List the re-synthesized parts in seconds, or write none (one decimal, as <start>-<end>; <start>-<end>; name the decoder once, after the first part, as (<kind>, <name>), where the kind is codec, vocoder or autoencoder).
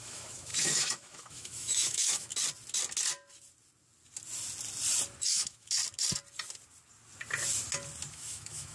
0.0-2.3 (autoencoder, DAC-VAE); 5.2-5.8; 8.1-8.7